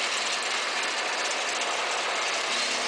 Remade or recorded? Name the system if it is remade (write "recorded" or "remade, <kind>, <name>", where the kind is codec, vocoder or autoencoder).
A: recorded